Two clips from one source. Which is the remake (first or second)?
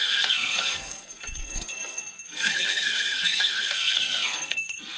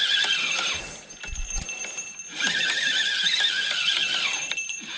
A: first